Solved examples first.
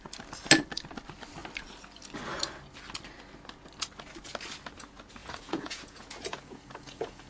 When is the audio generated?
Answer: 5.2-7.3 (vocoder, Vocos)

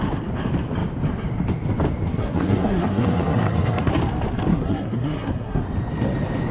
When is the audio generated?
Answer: 2.1-3.9 (codec, SNAC); 4.5-5.6

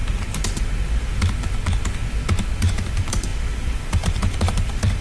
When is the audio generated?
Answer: 2.6-5.0 (vocoder, BigVGAN v2)

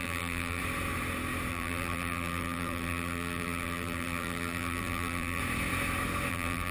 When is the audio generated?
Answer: 0.0-0.6 (vocoder, BigVGAN v2); 1.5-5.4; 6.3-6.7